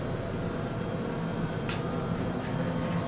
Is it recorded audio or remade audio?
recorded